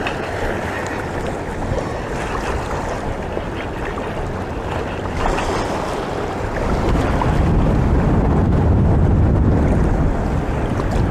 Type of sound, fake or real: real